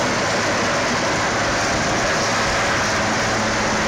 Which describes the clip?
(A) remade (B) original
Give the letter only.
B